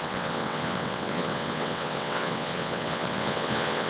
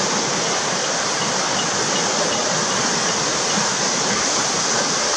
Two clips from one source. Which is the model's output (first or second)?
first